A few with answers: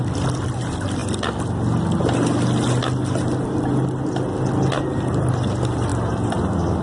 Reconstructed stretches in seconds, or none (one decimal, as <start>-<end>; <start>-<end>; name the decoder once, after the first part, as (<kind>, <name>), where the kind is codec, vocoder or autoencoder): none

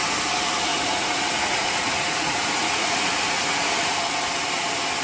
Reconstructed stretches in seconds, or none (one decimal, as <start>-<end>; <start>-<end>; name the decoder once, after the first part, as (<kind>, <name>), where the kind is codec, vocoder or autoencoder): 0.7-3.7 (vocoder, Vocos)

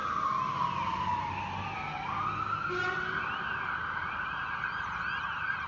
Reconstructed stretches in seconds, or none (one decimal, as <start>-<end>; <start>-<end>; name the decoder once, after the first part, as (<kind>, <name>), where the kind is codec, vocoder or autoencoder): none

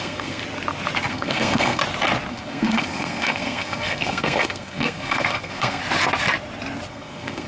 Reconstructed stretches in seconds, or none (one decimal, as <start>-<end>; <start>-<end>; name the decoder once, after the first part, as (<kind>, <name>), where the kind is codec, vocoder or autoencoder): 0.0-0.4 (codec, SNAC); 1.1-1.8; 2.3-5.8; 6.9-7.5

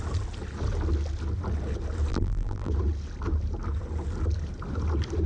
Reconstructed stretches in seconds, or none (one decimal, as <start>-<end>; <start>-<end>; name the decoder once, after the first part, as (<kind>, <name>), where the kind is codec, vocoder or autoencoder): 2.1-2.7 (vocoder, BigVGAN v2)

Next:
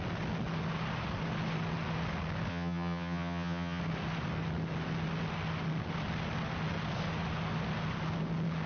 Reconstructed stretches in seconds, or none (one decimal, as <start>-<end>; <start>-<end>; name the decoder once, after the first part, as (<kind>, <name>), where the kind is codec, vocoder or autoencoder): 2.5-3.8 (vocoder, HiFi-GAN)

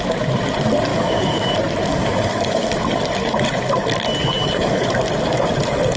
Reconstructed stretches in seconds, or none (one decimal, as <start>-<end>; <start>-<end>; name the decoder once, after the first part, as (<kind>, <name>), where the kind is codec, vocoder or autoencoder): 0.9-1.5 (codec, DAC); 1.9-2.7; 4.2-4.9